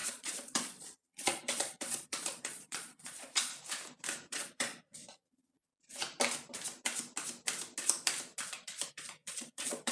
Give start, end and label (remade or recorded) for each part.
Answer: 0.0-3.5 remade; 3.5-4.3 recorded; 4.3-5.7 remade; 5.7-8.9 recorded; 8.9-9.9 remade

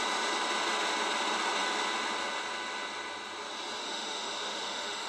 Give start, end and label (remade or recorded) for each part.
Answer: 0.0-3.8 recorded; 3.8-5.1 remade